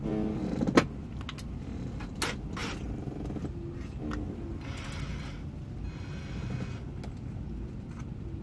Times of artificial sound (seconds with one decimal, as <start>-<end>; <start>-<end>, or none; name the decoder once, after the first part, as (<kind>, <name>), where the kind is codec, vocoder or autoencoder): none